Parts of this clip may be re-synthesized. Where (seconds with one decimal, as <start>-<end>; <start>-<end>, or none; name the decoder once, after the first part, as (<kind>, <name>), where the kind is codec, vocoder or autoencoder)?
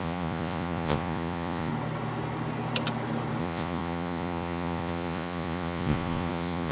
0.0-1.7 (vocoder, Vocos); 3.4-6.7